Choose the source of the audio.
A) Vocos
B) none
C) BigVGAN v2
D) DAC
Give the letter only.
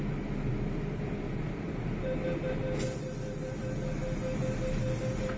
B